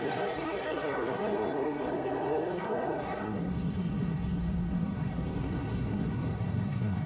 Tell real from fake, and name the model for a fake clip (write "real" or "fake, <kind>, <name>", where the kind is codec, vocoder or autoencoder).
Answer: fake, codec, SNAC